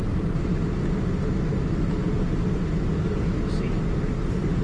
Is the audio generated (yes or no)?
no